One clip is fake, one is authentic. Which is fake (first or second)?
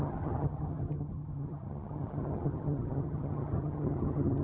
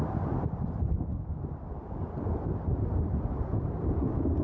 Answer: first